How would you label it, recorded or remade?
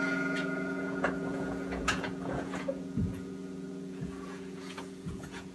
remade